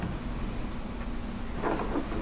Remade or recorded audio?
recorded